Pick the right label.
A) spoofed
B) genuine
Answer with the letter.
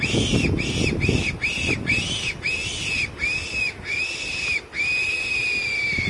A